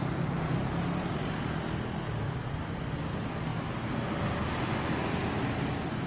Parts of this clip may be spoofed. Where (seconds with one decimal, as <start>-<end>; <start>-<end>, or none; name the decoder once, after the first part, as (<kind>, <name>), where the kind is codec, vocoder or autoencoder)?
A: none